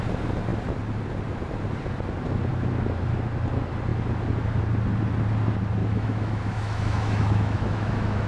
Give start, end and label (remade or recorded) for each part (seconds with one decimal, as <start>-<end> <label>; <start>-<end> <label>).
0.0-5.8 recorded; 5.8-8.3 remade